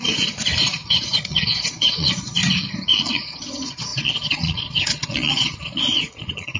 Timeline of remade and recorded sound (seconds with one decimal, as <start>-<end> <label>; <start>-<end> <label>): 0.0-2.4 remade; 2.4-3.1 recorded; 3.1-6.6 remade

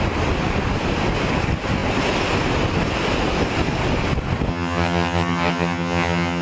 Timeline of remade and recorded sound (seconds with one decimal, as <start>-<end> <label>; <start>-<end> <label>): 0.0-4.5 recorded; 4.5-6.4 remade

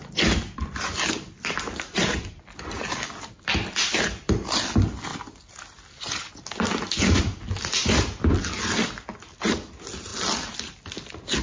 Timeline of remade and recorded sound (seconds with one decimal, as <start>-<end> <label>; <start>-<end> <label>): 0.0-11.4 recorded

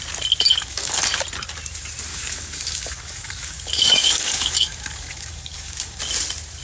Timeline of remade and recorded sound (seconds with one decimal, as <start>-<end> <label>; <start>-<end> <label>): 0.0-0.5 recorded; 0.5-1.0 remade; 1.0-2.1 recorded; 2.1-6.0 remade; 6.0-6.6 recorded

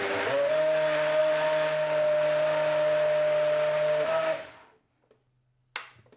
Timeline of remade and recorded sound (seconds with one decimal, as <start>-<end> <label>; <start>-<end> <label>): 0.0-6.2 recorded

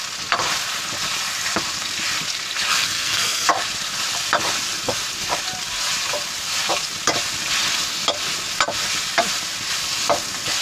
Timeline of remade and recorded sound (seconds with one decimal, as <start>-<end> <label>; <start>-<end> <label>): 0.0-2.7 recorded; 2.7-3.5 remade; 3.5-10.6 recorded

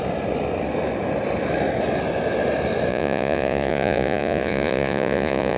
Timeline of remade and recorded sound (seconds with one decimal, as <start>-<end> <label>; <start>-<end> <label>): 0.0-2.9 recorded; 2.9-5.6 remade